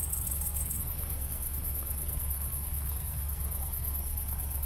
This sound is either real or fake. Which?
fake